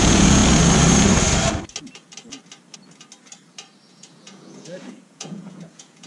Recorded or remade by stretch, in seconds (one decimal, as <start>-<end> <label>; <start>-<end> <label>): 0.0-0.4 remade; 0.4-3.9 recorded; 3.9-6.1 remade